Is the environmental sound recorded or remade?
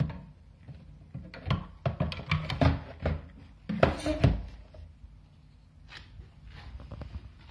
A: recorded